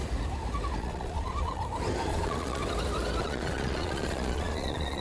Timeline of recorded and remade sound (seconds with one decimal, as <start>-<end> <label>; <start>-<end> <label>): 0.0-0.8 recorded; 0.8-1.6 remade; 1.6-2.1 recorded; 2.1-2.6 remade; 2.6-3.2 recorded; 3.2-5.0 remade